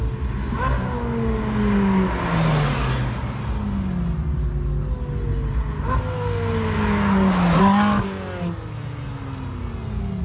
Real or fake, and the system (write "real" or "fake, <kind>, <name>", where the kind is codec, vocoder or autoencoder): real